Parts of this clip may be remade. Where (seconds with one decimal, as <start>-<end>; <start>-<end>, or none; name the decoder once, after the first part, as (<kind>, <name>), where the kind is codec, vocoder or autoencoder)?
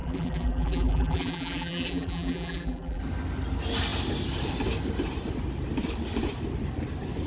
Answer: 0.0-3.0 (vocoder, BigVGAN v2)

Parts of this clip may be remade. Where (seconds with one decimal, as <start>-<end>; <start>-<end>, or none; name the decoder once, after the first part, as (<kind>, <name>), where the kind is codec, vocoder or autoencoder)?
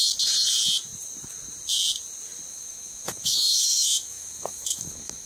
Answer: 2.5-5.3 (autoencoder, DAC-VAE)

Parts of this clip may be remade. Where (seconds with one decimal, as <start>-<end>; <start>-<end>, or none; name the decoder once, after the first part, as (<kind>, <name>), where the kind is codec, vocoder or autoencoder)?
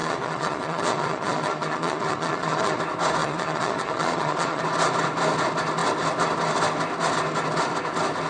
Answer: 0.0-2.8 (vocoder, Vocos); 3.2-4.6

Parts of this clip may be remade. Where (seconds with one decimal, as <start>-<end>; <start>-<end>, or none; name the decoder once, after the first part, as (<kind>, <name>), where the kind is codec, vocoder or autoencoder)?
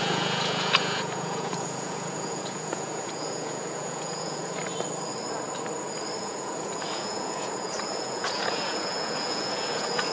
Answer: 0.0-4.6 (vocoder, Vocos); 6.2-10.1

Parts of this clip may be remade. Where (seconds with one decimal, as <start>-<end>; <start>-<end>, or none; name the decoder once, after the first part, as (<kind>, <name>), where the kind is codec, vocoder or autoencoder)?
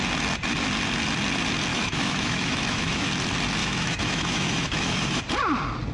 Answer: 1.7-3.1 (autoencoder, DAC-VAE); 3.6-5.2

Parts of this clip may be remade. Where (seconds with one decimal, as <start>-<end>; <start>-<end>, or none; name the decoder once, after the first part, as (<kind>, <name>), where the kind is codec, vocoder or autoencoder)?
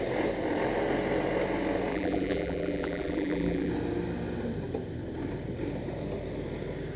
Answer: 1.9-3.7 (vocoder, BigVGAN v2)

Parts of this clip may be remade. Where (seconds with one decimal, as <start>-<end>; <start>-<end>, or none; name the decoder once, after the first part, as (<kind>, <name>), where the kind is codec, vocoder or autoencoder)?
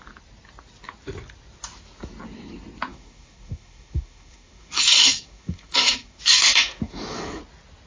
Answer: 2.9-7.4 (autoencoder, DAC-VAE)